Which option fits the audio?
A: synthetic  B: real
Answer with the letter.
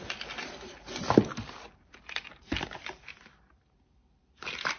A